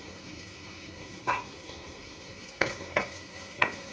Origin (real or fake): fake